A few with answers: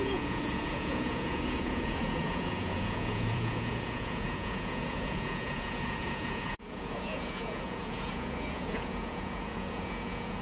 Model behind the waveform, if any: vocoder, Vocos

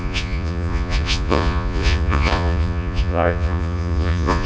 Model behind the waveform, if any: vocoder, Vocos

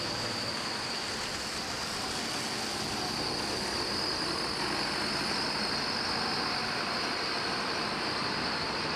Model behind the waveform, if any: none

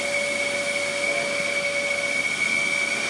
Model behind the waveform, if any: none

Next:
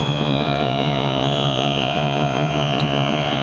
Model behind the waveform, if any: vocoder, Vocos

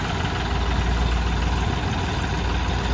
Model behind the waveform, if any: none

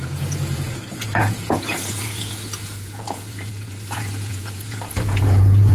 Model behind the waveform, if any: vocoder, Vocos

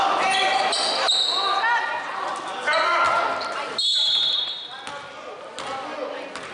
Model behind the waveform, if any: none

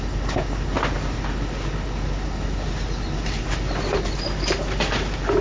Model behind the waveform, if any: none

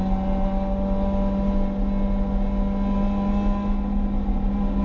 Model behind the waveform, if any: none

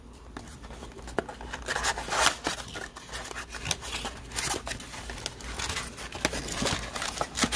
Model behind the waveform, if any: none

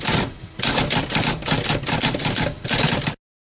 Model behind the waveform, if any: none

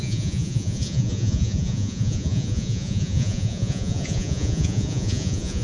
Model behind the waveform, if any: vocoder, Vocos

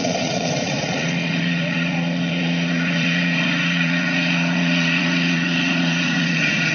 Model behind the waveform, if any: vocoder, Vocos